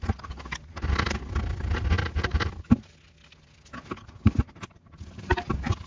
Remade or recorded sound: recorded